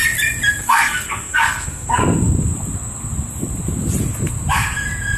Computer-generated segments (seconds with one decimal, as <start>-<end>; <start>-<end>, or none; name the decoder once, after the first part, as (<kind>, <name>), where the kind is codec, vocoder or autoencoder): 0.6-2.0 (codec, SNAC)